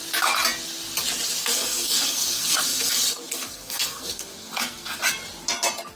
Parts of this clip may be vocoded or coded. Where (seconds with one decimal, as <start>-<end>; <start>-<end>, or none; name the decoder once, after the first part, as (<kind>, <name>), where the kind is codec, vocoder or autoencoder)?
1.4-5.0 (codec, SNAC)